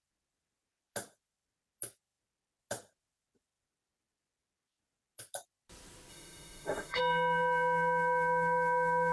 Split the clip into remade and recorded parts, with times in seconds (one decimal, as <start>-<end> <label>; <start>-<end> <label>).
0.0-6.1 recorded; 6.1-7.0 remade; 7.0-9.1 recorded